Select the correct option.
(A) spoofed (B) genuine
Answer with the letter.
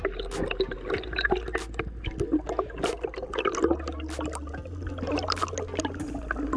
B